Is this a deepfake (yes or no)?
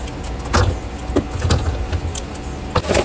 no